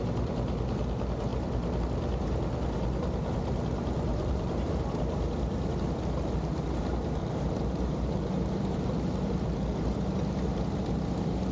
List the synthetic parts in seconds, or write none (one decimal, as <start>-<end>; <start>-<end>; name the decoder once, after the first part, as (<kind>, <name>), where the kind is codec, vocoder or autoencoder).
1.3-1.8 (vocoder, BigVGAN v2); 4.1-4.7; 7.2-9.3